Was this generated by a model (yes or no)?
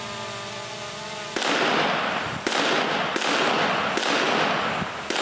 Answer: no